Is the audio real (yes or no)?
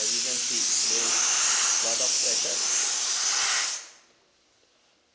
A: yes